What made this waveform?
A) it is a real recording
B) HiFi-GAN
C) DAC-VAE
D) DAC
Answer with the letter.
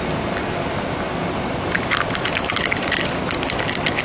A